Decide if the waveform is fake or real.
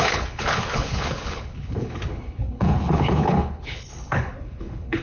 fake